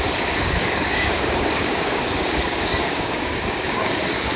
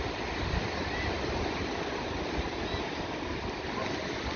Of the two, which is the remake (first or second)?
first